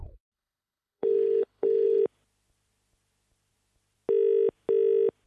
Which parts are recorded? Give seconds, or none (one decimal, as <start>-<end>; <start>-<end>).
2.0-5.3